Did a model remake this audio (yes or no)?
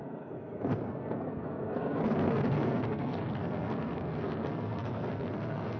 yes